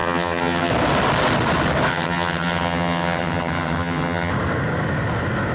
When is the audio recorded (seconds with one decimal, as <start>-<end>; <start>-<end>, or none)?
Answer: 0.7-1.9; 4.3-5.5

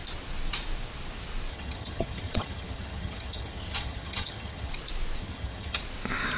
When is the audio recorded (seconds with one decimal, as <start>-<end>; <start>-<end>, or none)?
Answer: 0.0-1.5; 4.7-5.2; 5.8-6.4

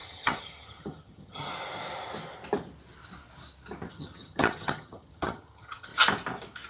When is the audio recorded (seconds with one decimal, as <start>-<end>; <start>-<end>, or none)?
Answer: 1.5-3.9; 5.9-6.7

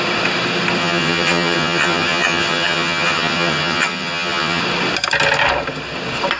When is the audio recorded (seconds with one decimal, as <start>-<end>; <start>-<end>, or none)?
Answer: 0.0-0.8; 4.6-6.4

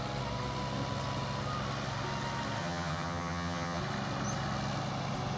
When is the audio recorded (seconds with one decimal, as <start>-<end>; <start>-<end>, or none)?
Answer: 0.0-2.6; 3.8-5.4

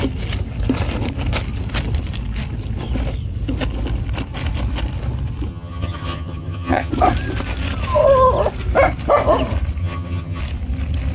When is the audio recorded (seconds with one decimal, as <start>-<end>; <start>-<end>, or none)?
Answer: 0.0-5.5; 6.9-9.8; 10.4-11.1